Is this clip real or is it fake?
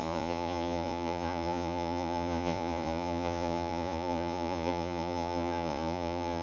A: fake